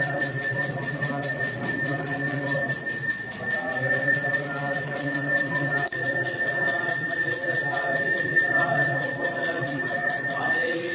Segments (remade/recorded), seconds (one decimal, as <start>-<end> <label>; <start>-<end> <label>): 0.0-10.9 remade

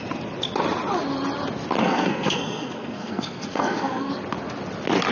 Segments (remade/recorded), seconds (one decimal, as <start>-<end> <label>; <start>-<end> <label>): 0.0-1.8 recorded; 1.8-4.1 remade; 4.1-5.1 recorded

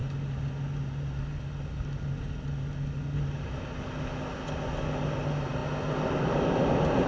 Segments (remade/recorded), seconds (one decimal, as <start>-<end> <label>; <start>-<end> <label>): 0.0-7.1 recorded

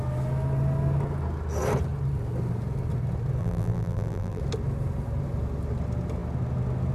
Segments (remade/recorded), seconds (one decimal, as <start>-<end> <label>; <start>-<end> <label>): 0.0-3.4 recorded; 3.4-4.4 remade; 4.4-6.9 recorded

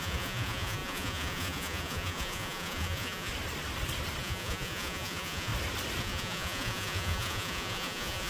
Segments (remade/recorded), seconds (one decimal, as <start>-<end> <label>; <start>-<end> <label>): 0.0-3.3 remade; 3.3-4.2 recorded; 4.2-5.5 remade; 5.5-6.0 recorded; 6.0-8.3 remade